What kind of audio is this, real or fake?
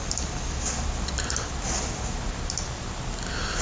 real